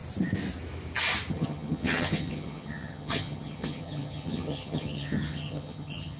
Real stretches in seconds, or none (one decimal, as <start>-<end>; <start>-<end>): 0.0-1.3